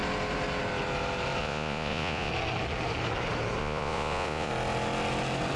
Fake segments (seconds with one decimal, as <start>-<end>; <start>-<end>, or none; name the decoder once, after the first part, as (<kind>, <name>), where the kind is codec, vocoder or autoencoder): 1.4-2.3 (vocoder, Vocos); 3.6-4.5